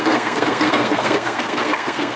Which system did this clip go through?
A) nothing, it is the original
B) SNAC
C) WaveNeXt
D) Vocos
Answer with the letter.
B